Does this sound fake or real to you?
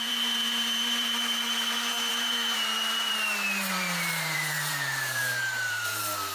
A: fake